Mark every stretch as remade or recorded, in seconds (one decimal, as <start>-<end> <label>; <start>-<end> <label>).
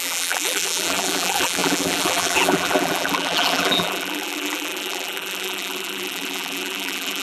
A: 0.0-7.2 remade